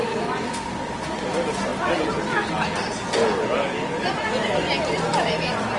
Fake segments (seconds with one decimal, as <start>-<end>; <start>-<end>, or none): none